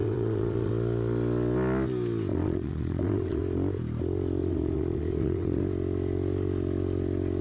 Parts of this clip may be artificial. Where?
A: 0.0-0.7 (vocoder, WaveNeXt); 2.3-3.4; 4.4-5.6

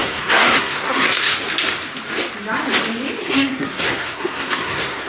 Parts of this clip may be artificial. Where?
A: 0.0-1.3 (codec, SNAC); 3.2-5.1

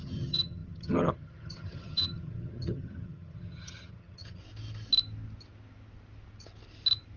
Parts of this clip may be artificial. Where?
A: 0.0-4.4 (vocoder, HiFi-GAN)

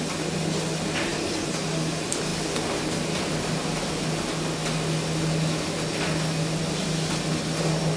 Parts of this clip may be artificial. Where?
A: none

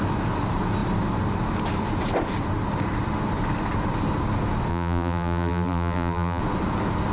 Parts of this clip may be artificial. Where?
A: 4.7-6.4 (vocoder, BigVGAN v2)

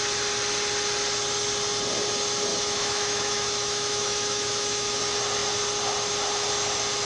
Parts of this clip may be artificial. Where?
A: 2.5-5.0 (autoencoder, DAC-VAE)